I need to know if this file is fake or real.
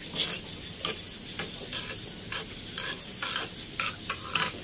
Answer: real